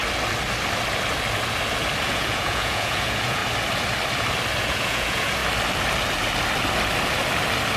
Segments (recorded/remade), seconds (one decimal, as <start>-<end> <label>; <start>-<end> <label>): 0.0-2.0 recorded; 2.0-3.4 remade; 3.4-4.6 recorded; 4.6-5.4 remade; 5.4-7.8 recorded